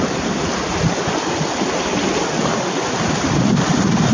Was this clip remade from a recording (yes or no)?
no